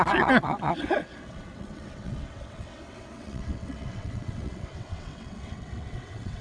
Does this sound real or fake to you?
fake